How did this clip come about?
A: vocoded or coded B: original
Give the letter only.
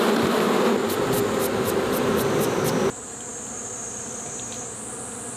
B